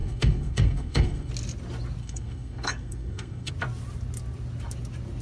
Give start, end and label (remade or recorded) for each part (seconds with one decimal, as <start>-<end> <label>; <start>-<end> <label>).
0.0-1.3 remade; 1.3-2.0 recorded; 2.0-3.5 remade; 3.5-5.2 recorded